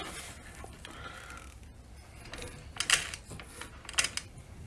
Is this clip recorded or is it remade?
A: recorded